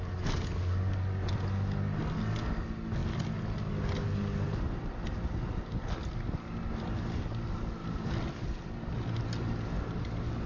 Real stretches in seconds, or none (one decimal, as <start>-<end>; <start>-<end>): 0.0-10.5